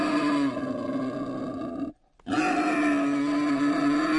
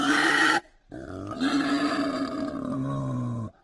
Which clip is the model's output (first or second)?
second